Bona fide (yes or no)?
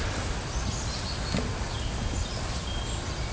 yes